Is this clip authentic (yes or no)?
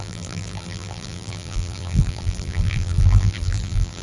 no